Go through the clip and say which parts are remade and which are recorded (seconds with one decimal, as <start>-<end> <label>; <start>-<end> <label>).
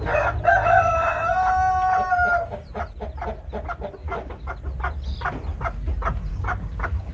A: 0.0-4.0 recorded; 4.0-4.5 remade; 4.5-6.3 recorded; 6.3-7.1 remade